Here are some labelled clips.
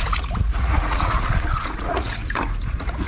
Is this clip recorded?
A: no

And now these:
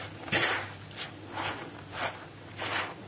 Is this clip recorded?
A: yes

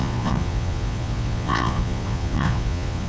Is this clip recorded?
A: no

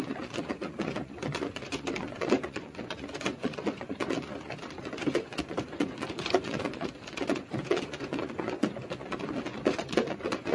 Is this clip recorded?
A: no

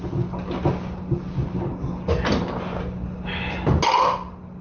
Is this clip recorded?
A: yes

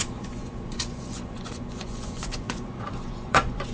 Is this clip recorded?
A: no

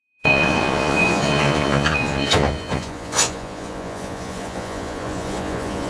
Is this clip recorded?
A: no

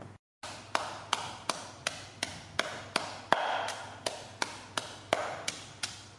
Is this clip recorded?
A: yes